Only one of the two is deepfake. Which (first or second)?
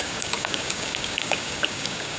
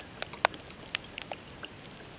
first